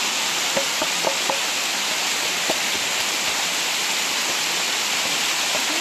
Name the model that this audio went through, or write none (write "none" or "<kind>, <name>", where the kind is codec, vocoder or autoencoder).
none